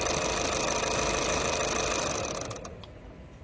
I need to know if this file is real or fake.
real